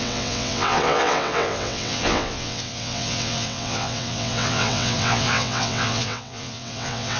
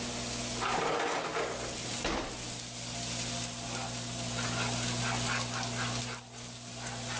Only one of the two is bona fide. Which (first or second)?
second